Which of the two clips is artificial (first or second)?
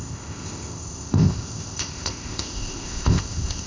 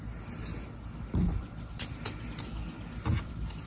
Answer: first